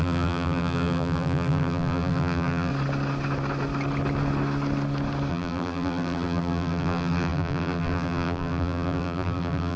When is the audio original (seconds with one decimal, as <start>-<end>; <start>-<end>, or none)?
2.7-5.3